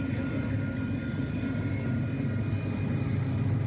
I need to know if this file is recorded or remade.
recorded